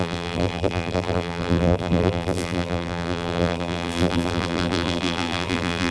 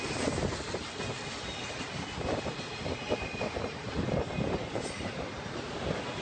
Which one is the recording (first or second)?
second